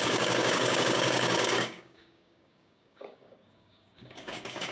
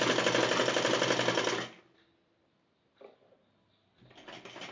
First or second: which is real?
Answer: second